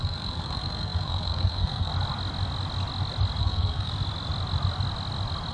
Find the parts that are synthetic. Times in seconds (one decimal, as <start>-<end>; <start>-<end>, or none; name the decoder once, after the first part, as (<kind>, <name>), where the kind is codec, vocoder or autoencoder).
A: 0.0-1.9 (codec, SNAC); 3.4-3.9